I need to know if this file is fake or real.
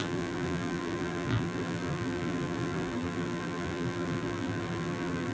fake